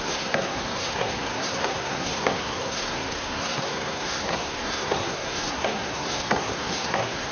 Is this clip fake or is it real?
fake